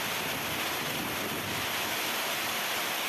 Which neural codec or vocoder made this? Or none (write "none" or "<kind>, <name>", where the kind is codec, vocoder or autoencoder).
none